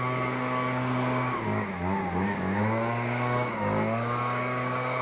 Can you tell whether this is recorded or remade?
remade